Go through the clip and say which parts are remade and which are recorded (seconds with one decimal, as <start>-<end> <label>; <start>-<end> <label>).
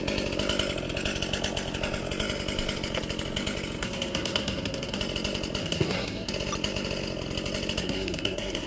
0.0-3.8 recorded; 3.8-5.0 remade; 5.0-5.6 recorded; 5.6-6.3 remade; 6.3-7.8 recorded; 7.8-8.7 remade